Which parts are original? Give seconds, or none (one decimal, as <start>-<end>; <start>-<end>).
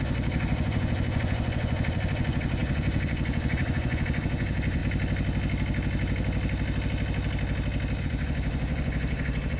4.8-8.0